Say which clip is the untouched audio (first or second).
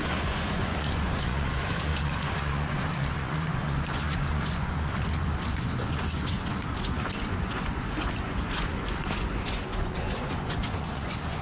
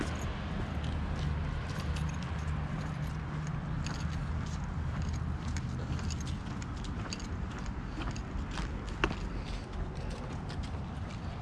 second